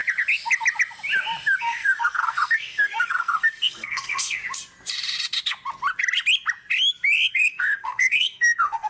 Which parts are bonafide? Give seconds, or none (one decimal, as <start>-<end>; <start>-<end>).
0.0-1.6; 4.4-7.3